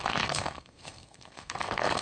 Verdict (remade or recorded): remade